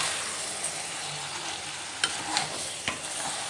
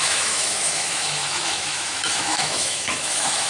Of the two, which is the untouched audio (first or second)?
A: first